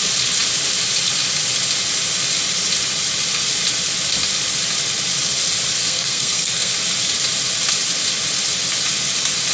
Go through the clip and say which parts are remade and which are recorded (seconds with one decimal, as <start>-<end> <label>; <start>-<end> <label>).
0.0-5.8 recorded; 5.8-6.7 remade; 6.7-9.5 recorded